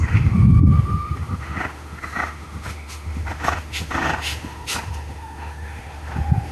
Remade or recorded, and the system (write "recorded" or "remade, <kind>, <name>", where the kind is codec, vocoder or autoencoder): remade, autoencoder, DAC-VAE